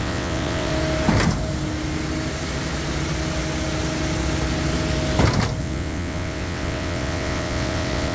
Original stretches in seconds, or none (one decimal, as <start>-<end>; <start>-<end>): 0.7-5.6